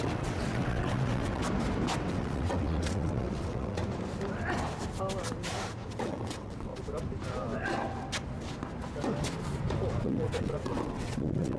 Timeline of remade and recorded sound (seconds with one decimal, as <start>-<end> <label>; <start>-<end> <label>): 0.0-1.4 remade; 1.4-2.1 recorded; 2.1-3.8 remade; 3.8-6.0 recorded; 6.0-6.7 remade; 6.7-10.0 recorded; 10.0-11.6 remade